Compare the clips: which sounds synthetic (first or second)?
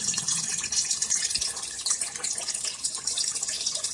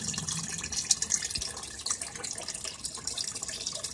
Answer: first